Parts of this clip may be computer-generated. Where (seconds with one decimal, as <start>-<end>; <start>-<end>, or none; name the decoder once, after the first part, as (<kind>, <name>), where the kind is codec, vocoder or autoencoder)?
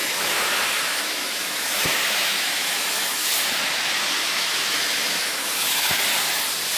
0.0-3.3 (autoencoder, DAC-VAE); 4.2-6.0